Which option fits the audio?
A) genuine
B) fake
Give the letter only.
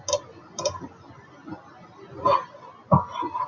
A